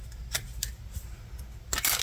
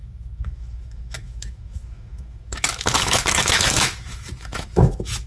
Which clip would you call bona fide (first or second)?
first